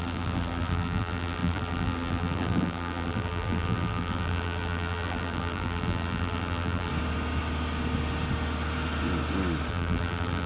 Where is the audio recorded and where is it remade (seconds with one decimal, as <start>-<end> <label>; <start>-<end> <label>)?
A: 0.0-6.9 remade; 6.9-9.7 recorded; 9.7-10.5 remade